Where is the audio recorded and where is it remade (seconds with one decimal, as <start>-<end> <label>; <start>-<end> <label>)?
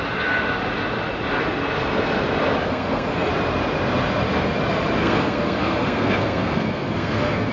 0.0-2.6 recorded; 2.6-3.3 remade; 3.3-5.0 recorded; 5.0-7.5 remade